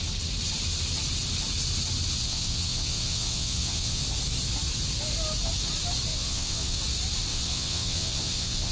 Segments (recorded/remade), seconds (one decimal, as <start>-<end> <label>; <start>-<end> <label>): 0.0-2.2 recorded; 2.2-4.0 remade; 4.0-6.1 recorded; 6.1-6.8 remade; 6.8-7.3 recorded; 7.3-8.7 remade